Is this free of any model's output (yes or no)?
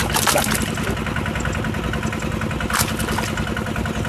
yes